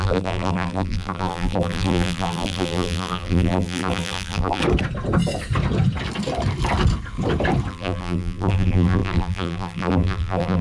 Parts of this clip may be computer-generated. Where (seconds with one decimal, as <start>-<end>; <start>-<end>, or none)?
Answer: 0.0-4.6; 7.7-10.6